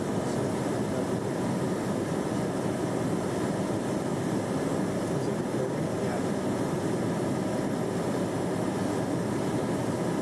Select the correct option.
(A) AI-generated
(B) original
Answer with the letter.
B